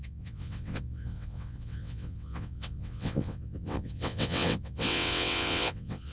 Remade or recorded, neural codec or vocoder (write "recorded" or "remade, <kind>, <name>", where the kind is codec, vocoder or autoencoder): remade, vocoder, WaveNeXt